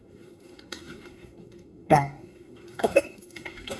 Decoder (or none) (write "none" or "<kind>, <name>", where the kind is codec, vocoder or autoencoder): codec, SNAC